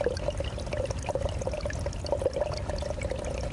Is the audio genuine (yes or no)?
yes